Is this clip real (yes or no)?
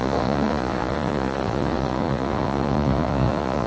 no